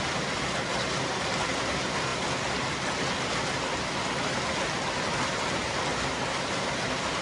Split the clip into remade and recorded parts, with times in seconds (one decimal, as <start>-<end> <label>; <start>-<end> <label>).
0.0-7.2 recorded